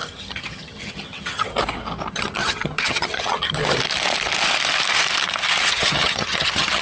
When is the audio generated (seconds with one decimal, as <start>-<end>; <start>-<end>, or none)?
0.0-1.5; 2.1-3.6; 5.7-6.8